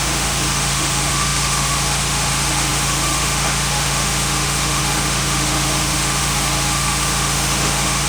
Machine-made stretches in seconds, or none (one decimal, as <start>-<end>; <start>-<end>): 0.0-8.1